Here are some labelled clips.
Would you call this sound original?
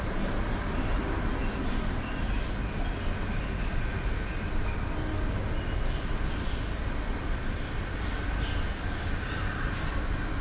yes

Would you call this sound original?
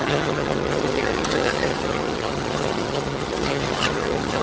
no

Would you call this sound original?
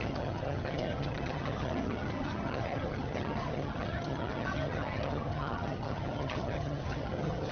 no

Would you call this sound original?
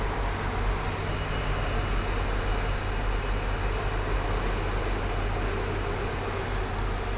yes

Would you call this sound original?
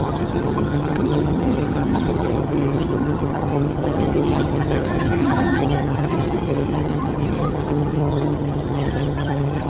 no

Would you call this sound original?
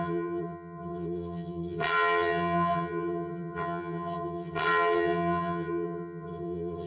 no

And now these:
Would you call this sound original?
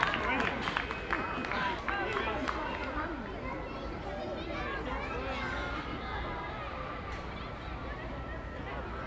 yes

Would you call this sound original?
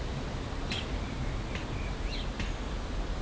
yes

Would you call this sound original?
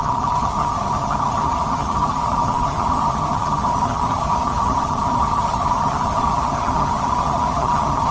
no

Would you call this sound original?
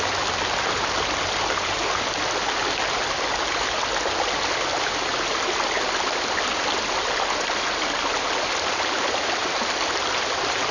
yes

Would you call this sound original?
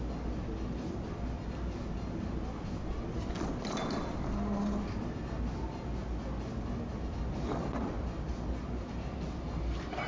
yes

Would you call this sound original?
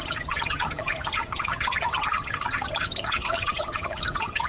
no